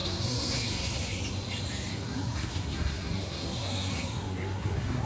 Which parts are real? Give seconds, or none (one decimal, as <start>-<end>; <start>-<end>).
1.2-1.9